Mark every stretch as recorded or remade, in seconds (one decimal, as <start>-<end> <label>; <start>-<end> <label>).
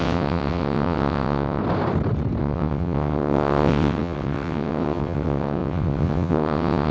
0.0-1.6 remade; 1.6-2.4 recorded; 2.4-6.9 remade